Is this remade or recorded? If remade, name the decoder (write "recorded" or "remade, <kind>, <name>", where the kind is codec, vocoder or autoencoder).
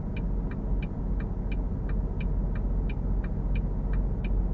recorded